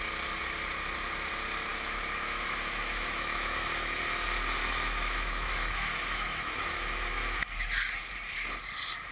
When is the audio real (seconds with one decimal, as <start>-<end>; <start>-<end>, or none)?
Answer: 0.0-1.7; 4.0-4.6; 7.4-9.1

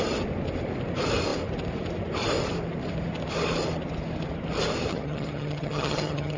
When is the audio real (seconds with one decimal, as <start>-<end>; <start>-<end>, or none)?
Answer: 0.0-4.9

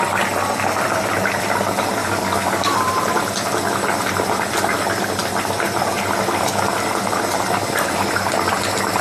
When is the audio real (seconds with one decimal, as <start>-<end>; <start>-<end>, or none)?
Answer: 0.0-2.0; 2.9-9.0

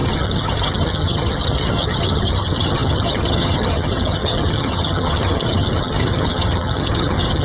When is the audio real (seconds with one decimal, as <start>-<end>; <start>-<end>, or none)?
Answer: none

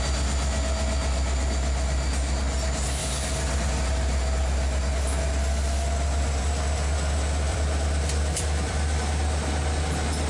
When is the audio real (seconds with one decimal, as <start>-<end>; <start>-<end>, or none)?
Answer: 0.0-7.5; 9.1-10.3